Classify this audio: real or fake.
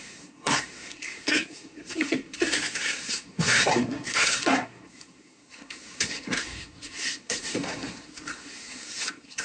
fake